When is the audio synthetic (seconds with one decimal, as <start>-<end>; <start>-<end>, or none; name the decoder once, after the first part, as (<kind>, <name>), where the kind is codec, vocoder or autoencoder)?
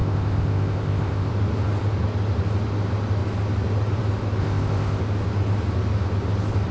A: 0.0-1.3 (codec, ZipCodec); 4.4-5.0